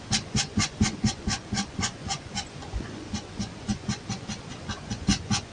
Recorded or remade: remade